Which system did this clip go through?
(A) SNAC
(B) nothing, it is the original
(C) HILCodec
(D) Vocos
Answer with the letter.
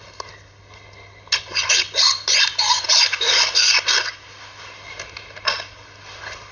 B